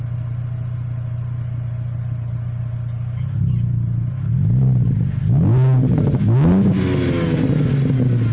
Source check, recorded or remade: recorded